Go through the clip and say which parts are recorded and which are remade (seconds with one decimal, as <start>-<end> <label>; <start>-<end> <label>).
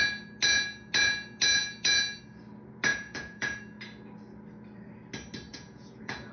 0.0-2.9 recorded; 2.9-3.6 remade; 3.6-5.5 recorded; 5.5-6.3 remade